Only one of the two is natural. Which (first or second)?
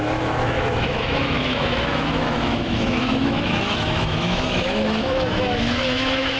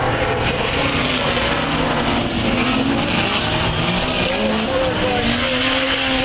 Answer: second